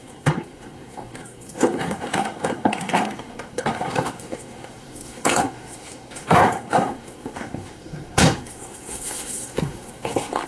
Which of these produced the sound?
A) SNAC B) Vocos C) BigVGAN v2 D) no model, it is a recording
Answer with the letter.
A